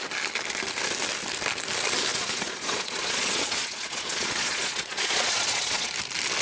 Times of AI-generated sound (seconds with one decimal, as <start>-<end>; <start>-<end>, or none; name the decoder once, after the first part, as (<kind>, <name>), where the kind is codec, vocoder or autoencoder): 2.1-5.9 (vocoder, Vocos)